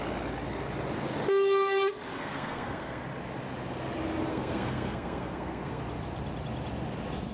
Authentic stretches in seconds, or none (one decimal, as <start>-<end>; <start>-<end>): 0.0-2.1; 3.0-4.3; 5.8-7.3